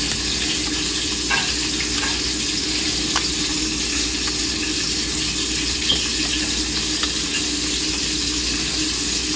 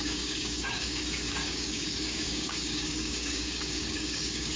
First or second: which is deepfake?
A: second